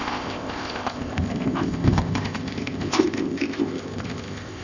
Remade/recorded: remade